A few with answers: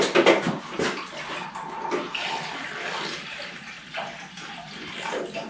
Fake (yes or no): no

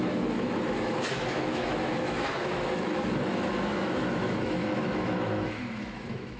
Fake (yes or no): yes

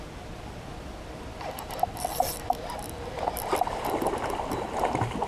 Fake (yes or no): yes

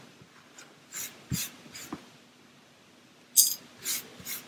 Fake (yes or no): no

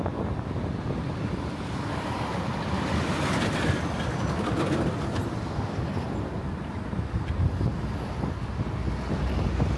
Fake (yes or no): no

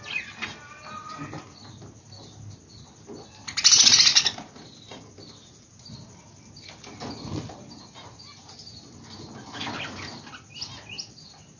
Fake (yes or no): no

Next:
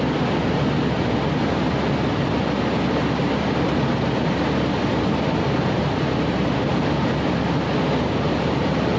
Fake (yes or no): no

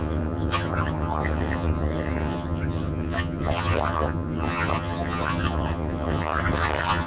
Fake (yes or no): yes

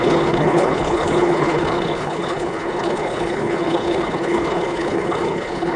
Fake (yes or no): yes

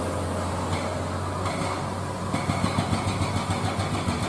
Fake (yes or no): no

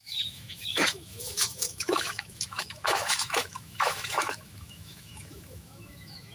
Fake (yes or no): yes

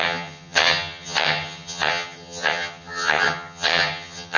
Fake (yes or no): yes